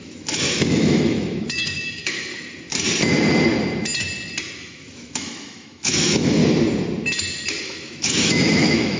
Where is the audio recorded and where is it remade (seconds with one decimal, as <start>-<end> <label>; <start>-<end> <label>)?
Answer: 0.0-2.3 remade; 2.3-4.6 recorded; 4.6-6.4 remade; 6.4-7.6 recorded; 7.6-9.0 remade